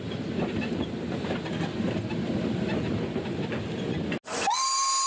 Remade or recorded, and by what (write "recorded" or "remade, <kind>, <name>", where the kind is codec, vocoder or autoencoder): recorded